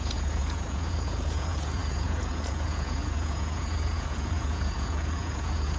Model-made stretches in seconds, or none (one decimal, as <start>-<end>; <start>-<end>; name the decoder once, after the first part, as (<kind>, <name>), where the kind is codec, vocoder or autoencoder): 0.0-5.8 (vocoder, Vocos)